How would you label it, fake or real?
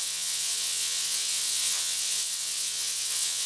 fake